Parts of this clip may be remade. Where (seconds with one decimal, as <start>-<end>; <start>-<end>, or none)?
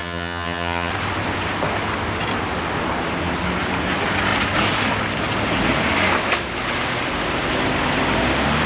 0.0-0.9